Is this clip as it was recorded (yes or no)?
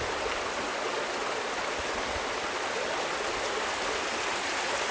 yes